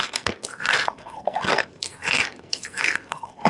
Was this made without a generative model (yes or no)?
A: no